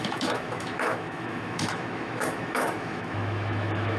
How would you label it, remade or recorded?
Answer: remade